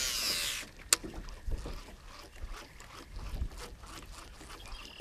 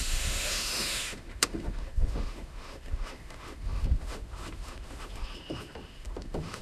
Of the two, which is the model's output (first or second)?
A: second